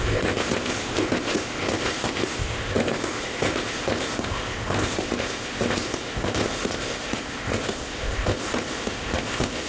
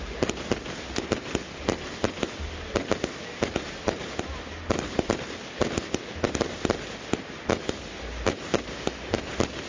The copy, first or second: first